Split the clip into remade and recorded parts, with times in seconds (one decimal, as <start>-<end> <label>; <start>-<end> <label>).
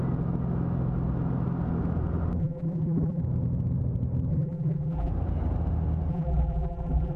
0.0-2.4 recorded; 2.4-3.2 remade; 3.2-4.3 recorded; 4.3-5.1 remade; 5.1-6.1 recorded; 6.1-7.2 remade